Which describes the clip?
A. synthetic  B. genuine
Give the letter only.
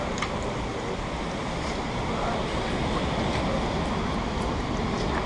B